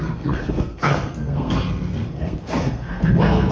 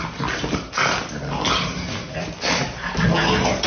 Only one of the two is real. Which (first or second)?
second